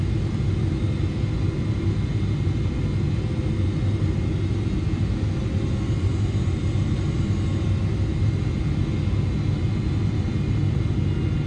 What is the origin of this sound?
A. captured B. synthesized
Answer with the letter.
A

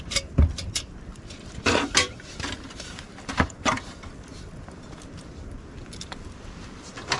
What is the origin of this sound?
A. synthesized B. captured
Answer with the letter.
A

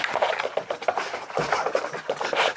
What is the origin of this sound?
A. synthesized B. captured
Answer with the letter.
B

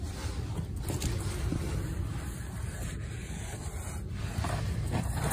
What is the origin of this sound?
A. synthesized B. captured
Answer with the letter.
A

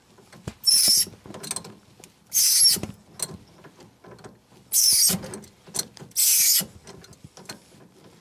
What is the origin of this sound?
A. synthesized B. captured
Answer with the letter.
B